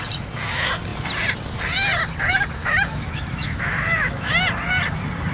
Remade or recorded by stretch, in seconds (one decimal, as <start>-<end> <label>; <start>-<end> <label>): 0.0-2.6 recorded; 2.6-4.3 remade; 4.3-5.3 recorded